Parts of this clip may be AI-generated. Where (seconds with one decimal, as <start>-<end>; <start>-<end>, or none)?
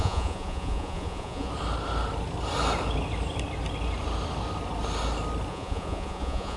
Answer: 0.0-1.5; 5.5-6.6